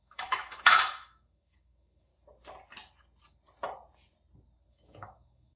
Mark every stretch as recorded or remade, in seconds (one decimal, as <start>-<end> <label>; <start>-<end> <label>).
0.0-2.1 remade; 2.1-4.7 recorded; 4.7-5.6 remade